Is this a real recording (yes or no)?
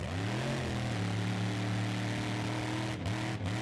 yes